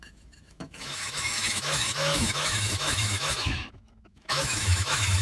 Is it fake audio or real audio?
fake